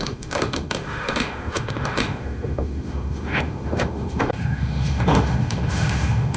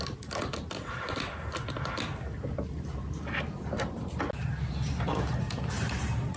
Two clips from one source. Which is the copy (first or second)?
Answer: first